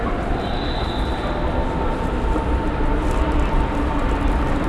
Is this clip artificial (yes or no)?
no